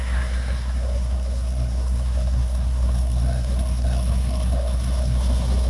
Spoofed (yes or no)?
yes